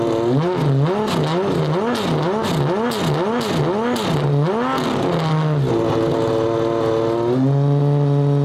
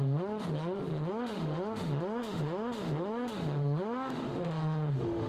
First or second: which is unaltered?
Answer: first